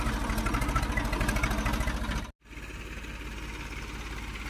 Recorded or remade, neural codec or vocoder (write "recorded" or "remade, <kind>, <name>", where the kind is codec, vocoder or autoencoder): recorded